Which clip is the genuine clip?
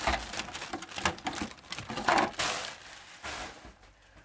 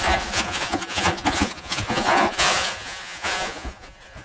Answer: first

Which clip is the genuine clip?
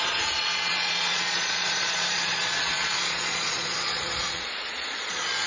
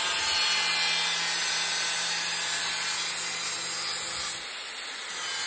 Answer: second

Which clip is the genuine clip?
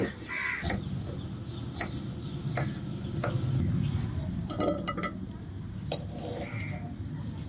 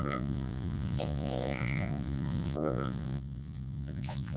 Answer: first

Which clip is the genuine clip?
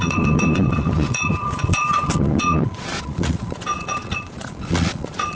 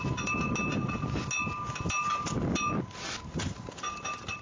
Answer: second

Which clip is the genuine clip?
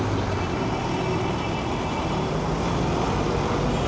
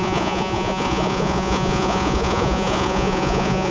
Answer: first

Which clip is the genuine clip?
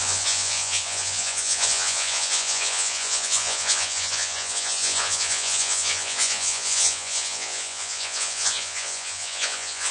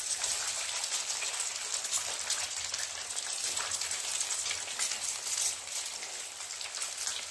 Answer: second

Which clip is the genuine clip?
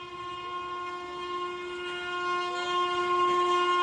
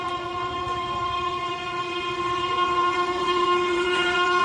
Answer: first